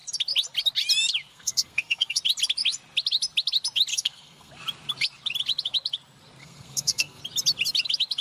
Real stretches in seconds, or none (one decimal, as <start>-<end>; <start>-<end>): 0.0-1.3; 2.2-3.9; 4.5-6.4; 7.2-8.2